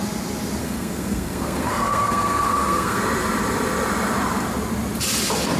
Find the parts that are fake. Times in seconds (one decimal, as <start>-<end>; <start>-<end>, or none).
0.6-3.0